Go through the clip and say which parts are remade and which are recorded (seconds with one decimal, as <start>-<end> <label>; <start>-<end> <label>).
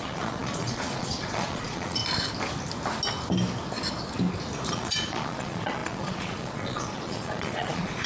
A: 0.0-2.0 remade; 2.0-4.7 recorded; 4.7-8.1 remade